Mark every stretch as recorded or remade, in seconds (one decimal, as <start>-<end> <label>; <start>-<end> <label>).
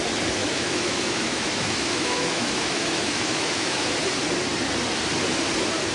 0.0-0.4 recorded; 0.4-3.9 remade; 3.9-5.9 recorded